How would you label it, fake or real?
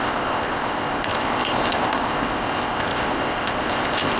fake